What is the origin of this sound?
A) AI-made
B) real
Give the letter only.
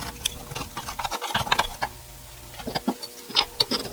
B